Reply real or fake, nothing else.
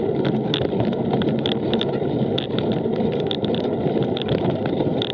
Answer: real